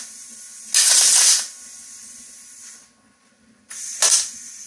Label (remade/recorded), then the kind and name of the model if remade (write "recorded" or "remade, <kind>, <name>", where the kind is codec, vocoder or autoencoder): recorded